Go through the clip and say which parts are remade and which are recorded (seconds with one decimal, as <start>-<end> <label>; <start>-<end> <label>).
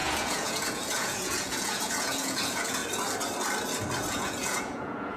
0.0-2.8 remade; 2.8-4.1 recorded; 4.1-5.2 remade